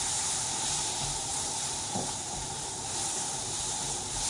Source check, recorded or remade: remade